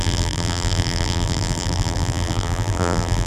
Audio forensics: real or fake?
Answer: fake